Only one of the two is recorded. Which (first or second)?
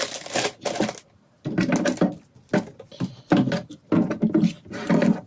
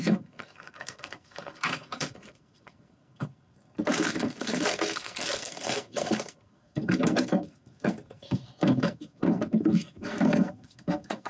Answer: first